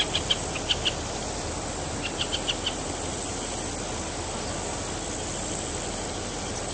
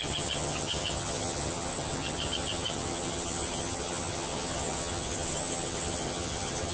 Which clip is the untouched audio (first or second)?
first